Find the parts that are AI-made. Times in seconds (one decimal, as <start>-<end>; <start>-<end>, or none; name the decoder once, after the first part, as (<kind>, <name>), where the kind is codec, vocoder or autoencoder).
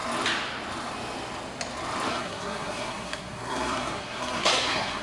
2.1-5.0 (codec, SNAC)